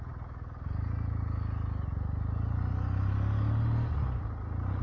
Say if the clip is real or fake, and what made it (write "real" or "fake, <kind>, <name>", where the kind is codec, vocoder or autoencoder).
real